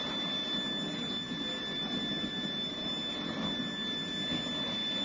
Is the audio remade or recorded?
recorded